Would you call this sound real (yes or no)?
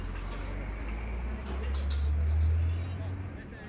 yes